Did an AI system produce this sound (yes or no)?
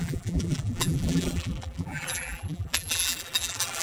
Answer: yes